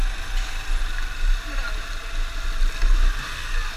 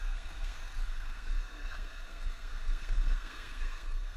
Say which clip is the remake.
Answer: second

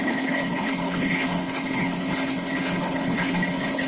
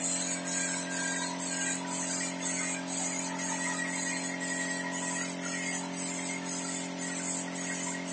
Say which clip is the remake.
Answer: first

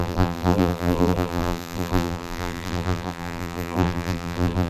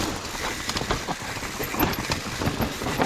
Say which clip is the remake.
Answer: first